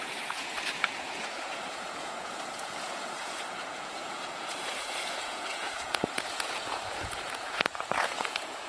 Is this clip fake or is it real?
fake